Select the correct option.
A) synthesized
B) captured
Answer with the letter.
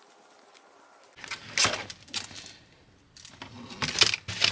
B